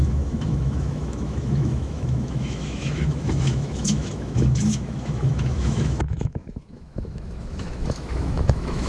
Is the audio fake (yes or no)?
yes